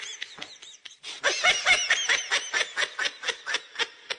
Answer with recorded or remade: recorded